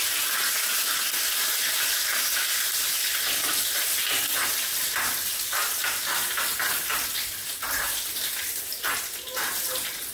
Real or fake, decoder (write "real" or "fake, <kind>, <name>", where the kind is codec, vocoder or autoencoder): real